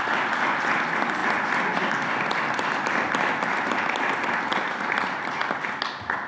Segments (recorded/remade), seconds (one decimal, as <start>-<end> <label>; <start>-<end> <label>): 0.0-6.3 recorded